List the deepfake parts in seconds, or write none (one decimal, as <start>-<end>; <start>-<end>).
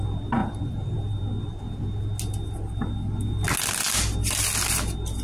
0.4-1.6